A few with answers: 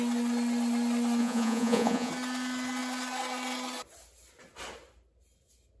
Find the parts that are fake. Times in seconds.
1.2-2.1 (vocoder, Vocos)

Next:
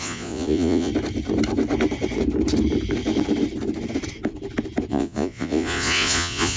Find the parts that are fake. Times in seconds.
0.0-0.9 (vocoder, Vocos); 4.9-6.6

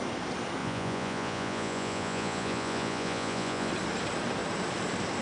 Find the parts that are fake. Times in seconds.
0.6-3.7 (vocoder, Vocos)

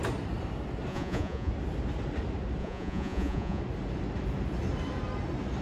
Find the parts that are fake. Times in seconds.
0.9-1.5 (vocoder, Vocos); 2.6-3.6

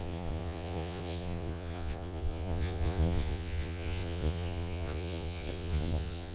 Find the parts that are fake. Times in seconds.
0.0-6.3 (vocoder, Vocos)